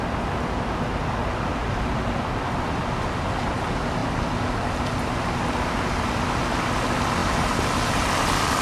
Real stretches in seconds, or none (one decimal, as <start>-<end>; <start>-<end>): 0.0-8.6